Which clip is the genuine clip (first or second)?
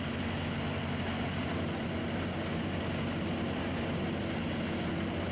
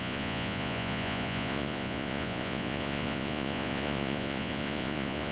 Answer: first